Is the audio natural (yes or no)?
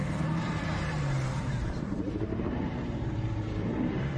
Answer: no